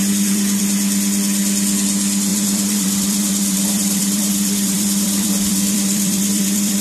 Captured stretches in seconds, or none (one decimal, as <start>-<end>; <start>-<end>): 0.6-2.3